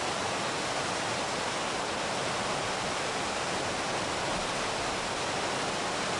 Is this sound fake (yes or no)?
no